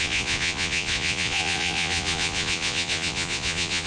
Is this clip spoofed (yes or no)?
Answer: yes